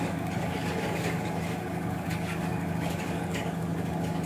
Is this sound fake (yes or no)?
yes